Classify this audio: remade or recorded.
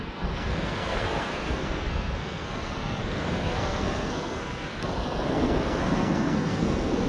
remade